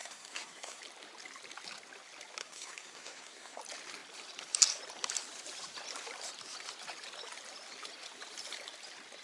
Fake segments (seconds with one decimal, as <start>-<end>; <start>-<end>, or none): 0.0-0.8; 2.4-3.6